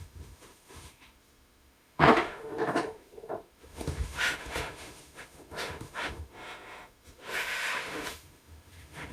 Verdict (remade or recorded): remade